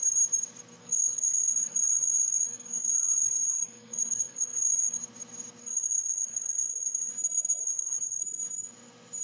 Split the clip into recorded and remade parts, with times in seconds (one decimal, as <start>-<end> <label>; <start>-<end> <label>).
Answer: 0.0-0.8 recorded; 0.8-5.0 remade; 5.0-5.6 recorded; 5.6-7.1 remade; 7.1-7.6 recorded; 7.6-8.2 remade; 8.2-9.2 recorded